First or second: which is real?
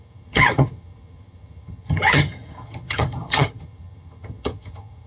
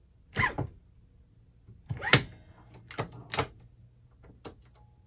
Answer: second